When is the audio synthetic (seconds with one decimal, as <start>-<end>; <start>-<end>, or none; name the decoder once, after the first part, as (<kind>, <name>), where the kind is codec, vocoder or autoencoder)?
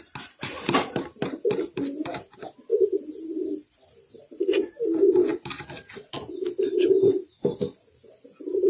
0.0-5.3 (vocoder, BigVGAN v2); 6.3-8.7